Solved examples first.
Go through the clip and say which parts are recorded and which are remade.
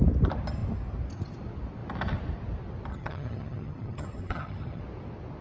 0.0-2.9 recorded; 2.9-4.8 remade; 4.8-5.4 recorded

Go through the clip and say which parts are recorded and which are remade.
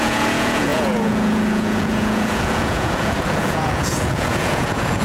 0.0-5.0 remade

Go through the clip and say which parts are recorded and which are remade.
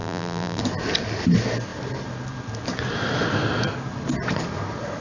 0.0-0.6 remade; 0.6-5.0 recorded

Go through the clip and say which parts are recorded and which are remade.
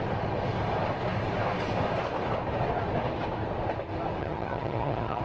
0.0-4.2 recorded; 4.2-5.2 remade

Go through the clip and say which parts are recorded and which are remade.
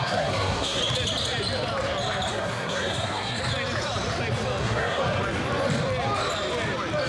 0.0-0.8 remade; 0.8-2.3 recorded; 2.3-3.4 remade; 3.4-4.6 recorded; 4.6-5.0 remade; 5.0-7.1 recorded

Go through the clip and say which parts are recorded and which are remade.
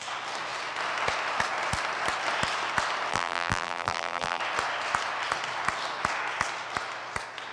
0.0-3.1 recorded; 3.1-4.4 remade; 4.4-7.5 recorded